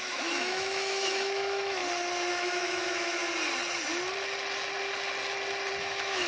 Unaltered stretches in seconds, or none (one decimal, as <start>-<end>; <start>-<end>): 1.8-2.3; 3.2-5.8